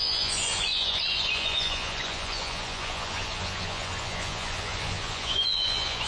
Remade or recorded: remade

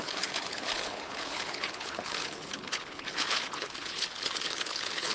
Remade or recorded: remade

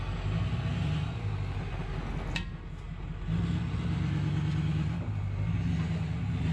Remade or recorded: recorded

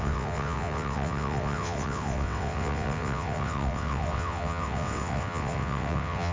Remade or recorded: remade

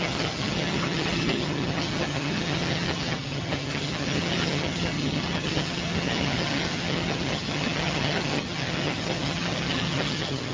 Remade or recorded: remade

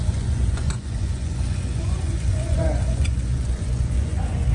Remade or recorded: remade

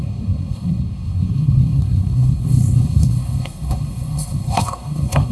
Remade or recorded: remade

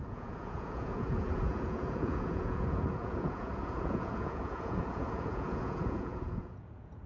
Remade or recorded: remade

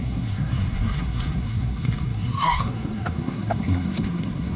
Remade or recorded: remade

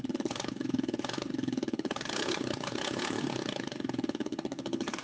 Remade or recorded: remade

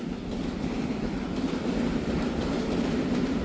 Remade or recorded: recorded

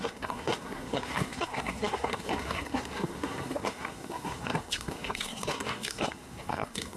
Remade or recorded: remade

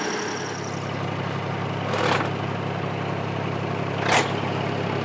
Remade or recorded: recorded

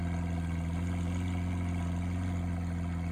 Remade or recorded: recorded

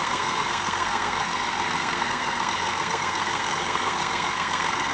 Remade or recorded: remade